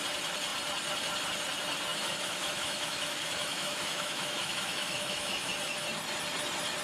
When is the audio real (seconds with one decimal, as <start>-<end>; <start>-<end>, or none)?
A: 0.0-1.9; 5.5-6.8